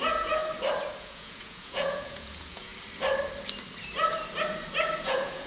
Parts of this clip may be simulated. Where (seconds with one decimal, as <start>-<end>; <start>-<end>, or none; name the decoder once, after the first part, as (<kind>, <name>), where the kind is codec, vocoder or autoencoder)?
0.0-0.4 (vocoder, Vocos); 1.0-2.7; 5.0-5.5